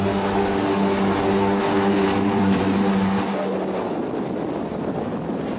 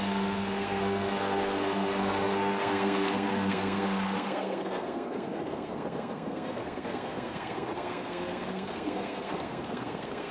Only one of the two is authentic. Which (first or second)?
first